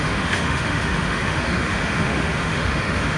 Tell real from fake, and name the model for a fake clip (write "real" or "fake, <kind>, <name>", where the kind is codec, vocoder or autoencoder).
fake, autoencoder, DAC-VAE